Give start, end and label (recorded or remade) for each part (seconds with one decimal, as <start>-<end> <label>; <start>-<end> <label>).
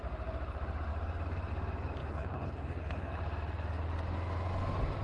0.0-2.0 recorded; 2.0-3.2 remade; 3.2-5.0 recorded